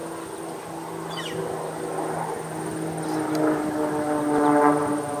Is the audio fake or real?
real